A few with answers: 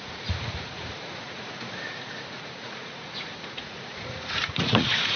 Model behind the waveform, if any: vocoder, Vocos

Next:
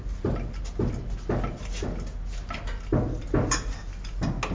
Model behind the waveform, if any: none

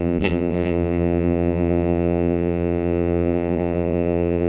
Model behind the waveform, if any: vocoder, BigVGAN v2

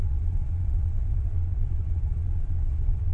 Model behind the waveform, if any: vocoder, Vocos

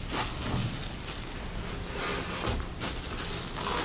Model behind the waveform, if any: none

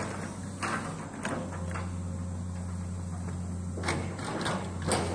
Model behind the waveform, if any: none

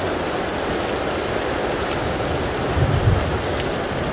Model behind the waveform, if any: none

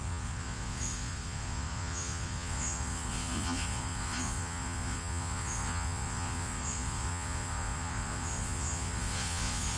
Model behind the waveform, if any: vocoder, Vocos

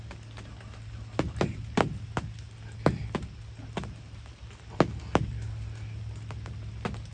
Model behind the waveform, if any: none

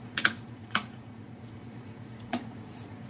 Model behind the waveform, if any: vocoder, Vocos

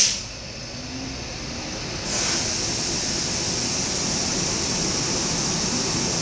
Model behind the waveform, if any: none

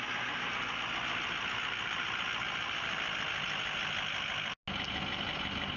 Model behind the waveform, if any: none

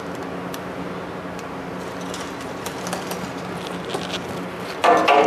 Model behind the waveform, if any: none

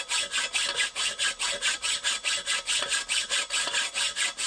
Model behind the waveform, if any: none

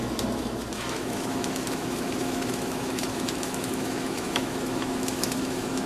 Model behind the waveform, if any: autoencoder, DAC-VAE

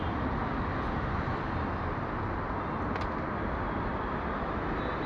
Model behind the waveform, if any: none